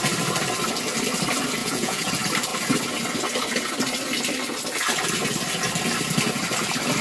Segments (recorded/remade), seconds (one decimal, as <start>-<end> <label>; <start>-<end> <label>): 0.0-1.6 recorded; 1.6-2.1 remade; 2.1-7.0 recorded